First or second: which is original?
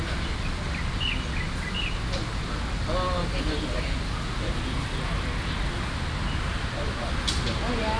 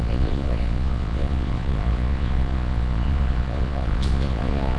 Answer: first